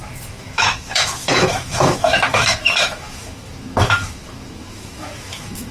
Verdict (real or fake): fake